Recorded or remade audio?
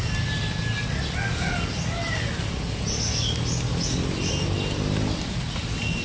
recorded